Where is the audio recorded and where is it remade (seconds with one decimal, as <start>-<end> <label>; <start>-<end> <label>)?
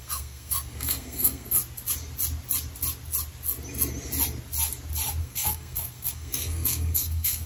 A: 0.0-1.6 remade; 1.6-5.2 recorded; 5.2-7.5 remade